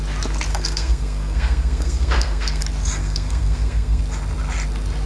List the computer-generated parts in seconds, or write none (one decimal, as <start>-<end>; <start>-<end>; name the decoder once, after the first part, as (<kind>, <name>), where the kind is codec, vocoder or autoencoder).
0.5-2.6 (codec, SNAC); 3.0-4.0